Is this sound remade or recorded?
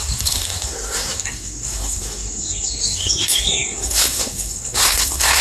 remade